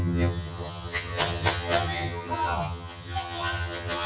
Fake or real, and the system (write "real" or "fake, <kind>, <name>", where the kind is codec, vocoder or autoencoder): fake, vocoder, HiFi-GAN